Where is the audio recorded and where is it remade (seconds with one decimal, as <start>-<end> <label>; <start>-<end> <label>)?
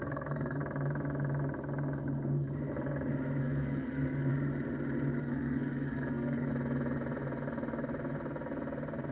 0.0-0.6 remade; 0.6-3.4 recorded; 3.4-4.3 remade; 4.3-5.2 recorded; 5.2-6.5 remade; 6.5-9.1 recorded